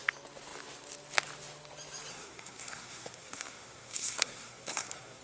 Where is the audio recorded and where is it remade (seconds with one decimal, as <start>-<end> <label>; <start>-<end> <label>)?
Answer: 0.0-2.1 recorded; 2.1-5.2 remade